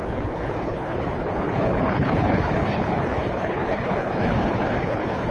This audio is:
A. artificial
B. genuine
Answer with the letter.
A